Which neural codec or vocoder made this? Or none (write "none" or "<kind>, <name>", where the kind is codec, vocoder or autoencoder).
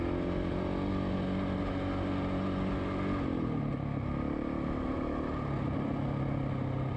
none